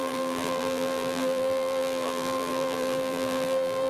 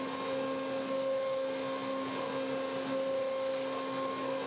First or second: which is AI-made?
first